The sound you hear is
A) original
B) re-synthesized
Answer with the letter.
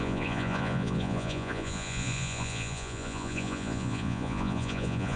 B